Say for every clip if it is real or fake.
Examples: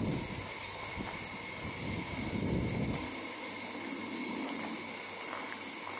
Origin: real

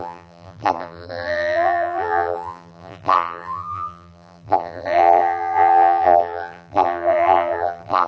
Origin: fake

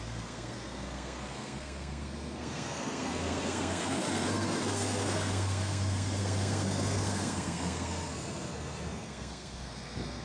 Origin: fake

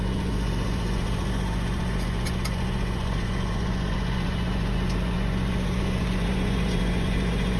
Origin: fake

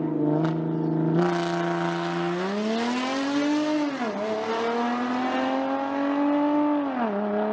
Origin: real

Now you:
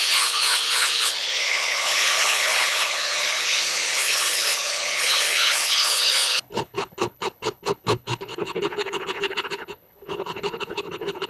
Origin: fake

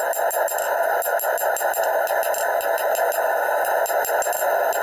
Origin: real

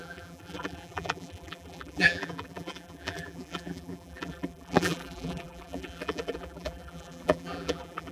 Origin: fake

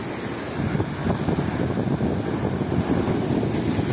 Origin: real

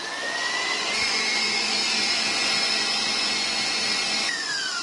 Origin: fake